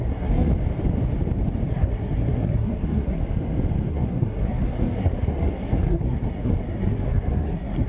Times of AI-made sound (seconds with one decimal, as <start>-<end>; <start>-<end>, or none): 0.0-0.5; 1.7-3.2; 3.9-7.9